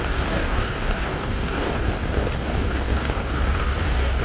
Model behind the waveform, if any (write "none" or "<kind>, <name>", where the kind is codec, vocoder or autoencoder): codec, DAC